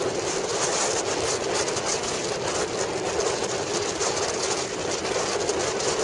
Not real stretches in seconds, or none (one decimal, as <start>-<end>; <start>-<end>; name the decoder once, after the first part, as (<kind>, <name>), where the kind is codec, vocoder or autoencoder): none